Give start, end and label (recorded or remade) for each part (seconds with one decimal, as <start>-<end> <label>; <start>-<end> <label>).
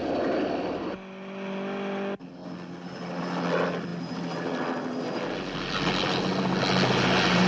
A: 0.0-7.5 recorded